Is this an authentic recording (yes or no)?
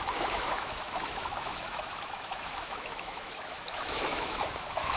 no